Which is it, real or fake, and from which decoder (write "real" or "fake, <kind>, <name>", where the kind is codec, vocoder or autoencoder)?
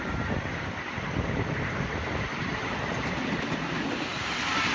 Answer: real